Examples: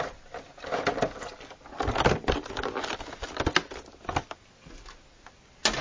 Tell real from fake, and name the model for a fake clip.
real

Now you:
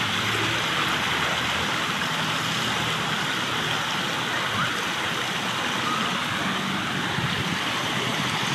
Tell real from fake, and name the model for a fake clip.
real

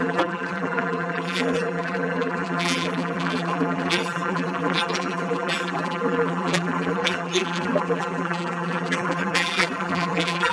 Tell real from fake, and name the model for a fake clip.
fake, vocoder, BigVGAN v2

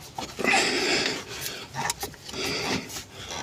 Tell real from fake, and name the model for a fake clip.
real